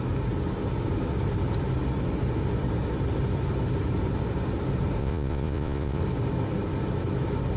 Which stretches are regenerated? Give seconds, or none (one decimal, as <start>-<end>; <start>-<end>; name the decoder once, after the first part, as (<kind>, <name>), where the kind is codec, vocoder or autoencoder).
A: 5.0-6.0 (vocoder, Vocos)

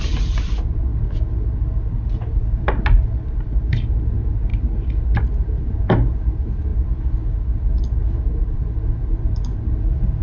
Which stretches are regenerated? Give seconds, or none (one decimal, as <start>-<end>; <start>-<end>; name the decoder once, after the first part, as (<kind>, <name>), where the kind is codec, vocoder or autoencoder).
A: 0.0-0.9 (vocoder, BigVGAN v2); 3.7-6.7; 8.0-10.2